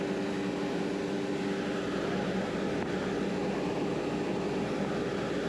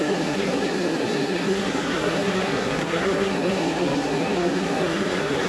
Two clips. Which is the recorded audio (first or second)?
first